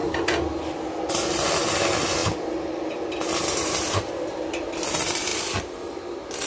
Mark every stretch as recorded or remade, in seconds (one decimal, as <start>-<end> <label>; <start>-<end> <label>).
0.0-1.1 recorded; 1.1-6.5 remade